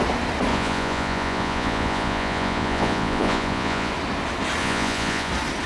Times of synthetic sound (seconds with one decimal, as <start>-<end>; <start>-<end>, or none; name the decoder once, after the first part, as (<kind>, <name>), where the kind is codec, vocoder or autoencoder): 0.5-3.9 (vocoder, Vocos); 4.6-5.3